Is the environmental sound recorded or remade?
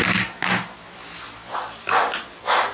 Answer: recorded